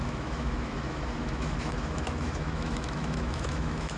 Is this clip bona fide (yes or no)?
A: no